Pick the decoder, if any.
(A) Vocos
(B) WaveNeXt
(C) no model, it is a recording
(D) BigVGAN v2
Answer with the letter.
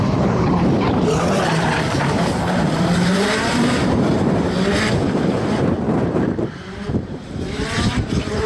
D